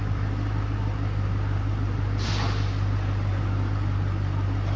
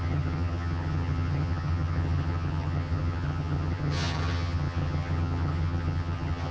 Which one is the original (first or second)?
first